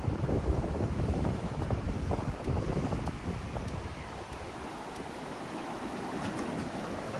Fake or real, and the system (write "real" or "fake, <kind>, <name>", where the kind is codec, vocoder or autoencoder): fake, autoencoder, DAC-VAE